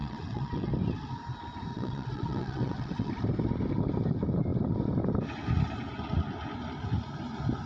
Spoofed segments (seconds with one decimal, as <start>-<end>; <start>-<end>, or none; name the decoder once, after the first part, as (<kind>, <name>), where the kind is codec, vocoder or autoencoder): 0.0-0.7 (vocoder, WaveNeXt); 1.7-3.1